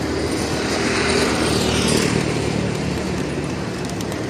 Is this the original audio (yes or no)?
no